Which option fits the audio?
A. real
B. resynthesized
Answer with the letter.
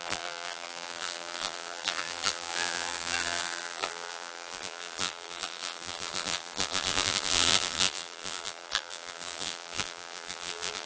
B